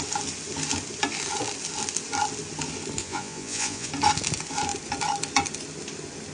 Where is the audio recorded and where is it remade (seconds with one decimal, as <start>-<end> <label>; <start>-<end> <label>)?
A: 0.0-3.0 recorded; 3.0-3.9 remade; 3.9-6.3 recorded